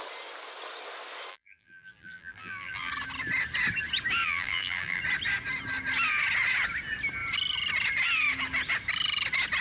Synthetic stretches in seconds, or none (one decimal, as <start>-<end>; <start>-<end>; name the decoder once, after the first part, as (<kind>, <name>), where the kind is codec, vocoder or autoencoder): 1.3-2.9 (vocoder, BigVGAN v2); 4.2-5.0